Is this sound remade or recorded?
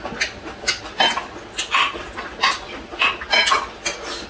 recorded